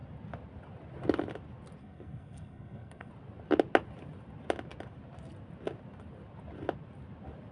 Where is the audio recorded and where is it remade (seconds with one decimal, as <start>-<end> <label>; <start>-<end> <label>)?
0.0-1.8 recorded; 1.8-3.1 remade; 3.1-7.5 recorded